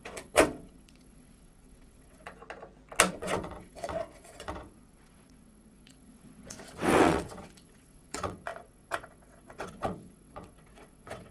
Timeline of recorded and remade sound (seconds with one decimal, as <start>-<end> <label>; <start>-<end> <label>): 0.0-2.4 remade; 2.4-3.1 recorded; 3.1-11.3 remade